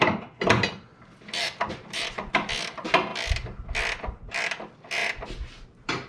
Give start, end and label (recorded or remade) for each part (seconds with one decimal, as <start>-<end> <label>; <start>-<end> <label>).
0.0-1.4 recorded; 1.4-2.3 remade; 2.3-5.0 recorded; 5.0-6.1 remade